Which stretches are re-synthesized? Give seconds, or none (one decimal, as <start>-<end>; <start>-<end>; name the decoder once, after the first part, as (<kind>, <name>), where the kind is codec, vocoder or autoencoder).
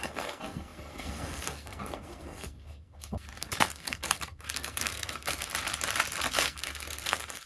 0.0-5.5 (codec, SNAC); 6.3-7.5